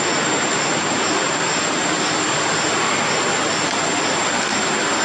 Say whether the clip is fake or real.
real